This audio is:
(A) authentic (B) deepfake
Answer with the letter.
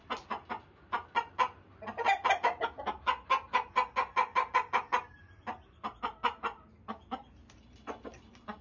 A